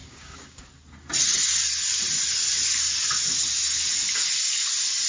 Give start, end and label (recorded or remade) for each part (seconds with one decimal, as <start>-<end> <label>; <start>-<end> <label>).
0.0-0.6 remade; 0.6-5.1 recorded